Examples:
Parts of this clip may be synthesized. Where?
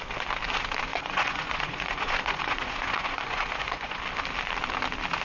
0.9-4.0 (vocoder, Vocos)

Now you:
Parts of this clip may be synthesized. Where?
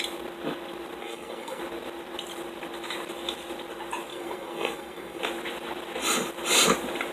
1.0-1.6 (codec, SNAC); 4.1-5.2